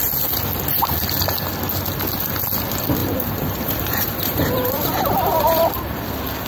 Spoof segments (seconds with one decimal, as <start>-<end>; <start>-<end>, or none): 3.0-5.4